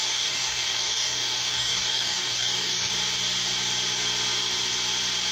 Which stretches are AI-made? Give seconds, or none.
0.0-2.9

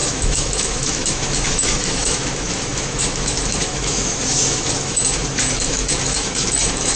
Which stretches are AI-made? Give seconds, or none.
0.0-7.0

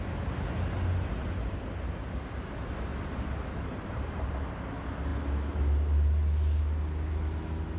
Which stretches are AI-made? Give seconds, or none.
2.9-4.3

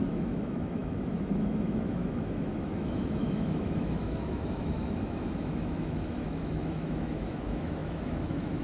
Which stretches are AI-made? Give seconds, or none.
0.0-8.6

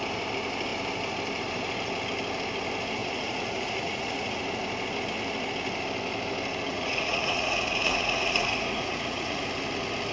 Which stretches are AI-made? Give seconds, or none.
3.0-4.4; 6.7-9.4

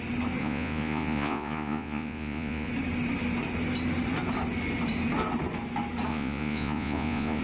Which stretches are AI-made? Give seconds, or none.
0.4-2.7; 6.1-7.4

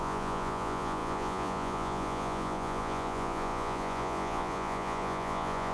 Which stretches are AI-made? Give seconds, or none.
0.0-5.7